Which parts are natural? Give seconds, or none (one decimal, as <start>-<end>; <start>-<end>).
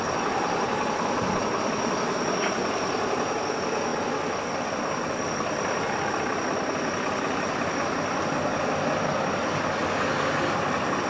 0.0-11.1